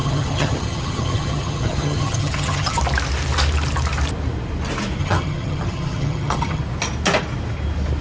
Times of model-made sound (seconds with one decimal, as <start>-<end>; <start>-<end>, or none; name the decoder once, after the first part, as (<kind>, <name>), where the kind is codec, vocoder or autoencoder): 0.0-2.8 (vocoder, HiFi-GAN); 5.0-6.6